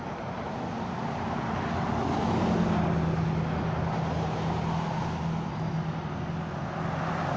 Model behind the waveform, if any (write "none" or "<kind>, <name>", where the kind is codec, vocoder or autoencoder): none